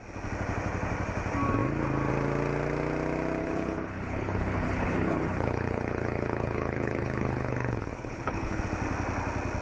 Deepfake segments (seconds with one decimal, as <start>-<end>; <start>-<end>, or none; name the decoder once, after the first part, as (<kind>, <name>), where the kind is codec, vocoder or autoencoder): 3.4-8.6 (codec, HILCodec)